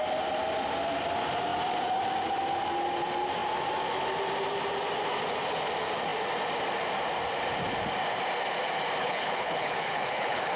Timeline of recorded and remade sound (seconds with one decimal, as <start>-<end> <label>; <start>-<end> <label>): 0.0-9.0 recorded; 9.0-10.6 remade